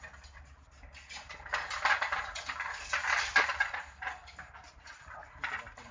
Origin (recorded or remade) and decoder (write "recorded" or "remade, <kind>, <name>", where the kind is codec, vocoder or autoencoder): recorded